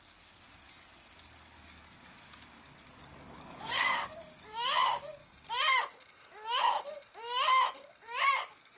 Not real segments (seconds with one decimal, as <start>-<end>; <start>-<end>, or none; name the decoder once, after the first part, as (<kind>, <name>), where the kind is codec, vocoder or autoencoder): 0.0-5.2 (codec, DAC); 8.3-8.8